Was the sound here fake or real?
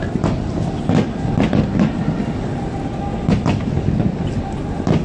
real